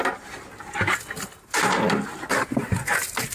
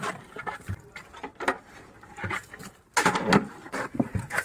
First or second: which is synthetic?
second